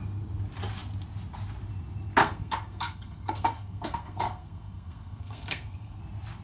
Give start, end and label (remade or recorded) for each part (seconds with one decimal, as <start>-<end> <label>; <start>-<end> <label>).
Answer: 0.0-2.2 recorded; 2.2-6.0 remade; 6.0-6.4 recorded